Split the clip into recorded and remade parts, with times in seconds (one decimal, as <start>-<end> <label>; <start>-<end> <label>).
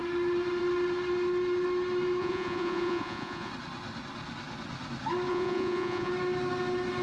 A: 0.0-2.2 recorded; 2.2-3.5 remade; 3.5-5.3 recorded; 5.3-6.1 remade; 6.1-7.0 recorded